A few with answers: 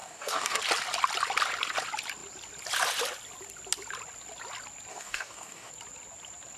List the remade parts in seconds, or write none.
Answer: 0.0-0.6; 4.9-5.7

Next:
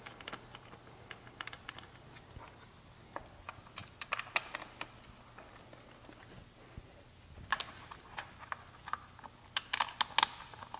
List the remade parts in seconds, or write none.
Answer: none

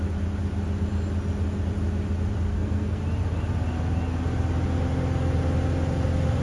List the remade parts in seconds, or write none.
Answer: 2.5-3.0

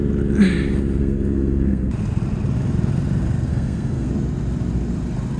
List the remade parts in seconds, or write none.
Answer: 1.0-1.9; 3.5-4.1

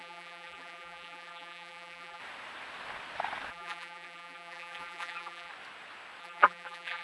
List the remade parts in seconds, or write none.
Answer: 0.0-2.2; 3.5-5.5; 6.2-7.0

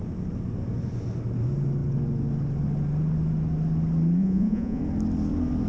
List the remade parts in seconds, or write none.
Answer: 4.2-4.8

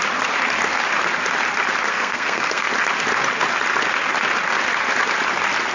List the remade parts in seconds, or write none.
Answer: 1.9-2.7